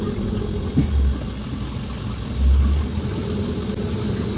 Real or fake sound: real